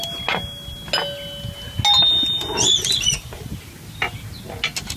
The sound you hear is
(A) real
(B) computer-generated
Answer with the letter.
A